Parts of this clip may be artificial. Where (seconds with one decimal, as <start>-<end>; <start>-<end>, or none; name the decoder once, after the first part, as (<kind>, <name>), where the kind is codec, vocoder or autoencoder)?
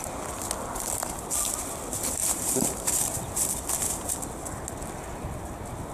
2.2-3.0 (vocoder, BigVGAN v2)